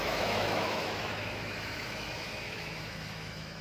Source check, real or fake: fake